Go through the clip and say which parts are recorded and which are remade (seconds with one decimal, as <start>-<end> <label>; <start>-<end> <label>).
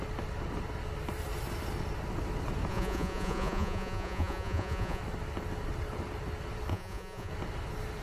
0.0-2.7 recorded; 2.7-5.0 remade; 5.0-6.7 recorded; 6.7-7.3 remade; 7.3-8.0 recorded